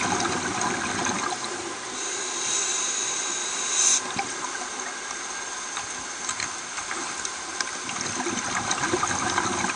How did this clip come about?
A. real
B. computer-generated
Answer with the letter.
A